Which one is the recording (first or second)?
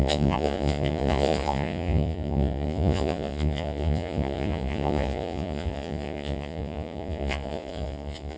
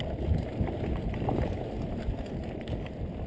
second